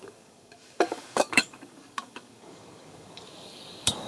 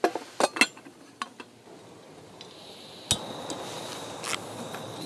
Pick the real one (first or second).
second